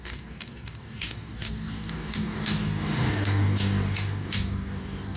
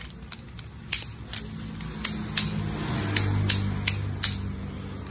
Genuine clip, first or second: second